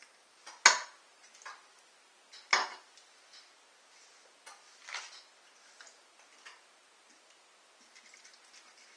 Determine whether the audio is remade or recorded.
recorded